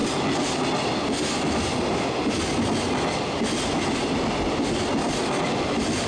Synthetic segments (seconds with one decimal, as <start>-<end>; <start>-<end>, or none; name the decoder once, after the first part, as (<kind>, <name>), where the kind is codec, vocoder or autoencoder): none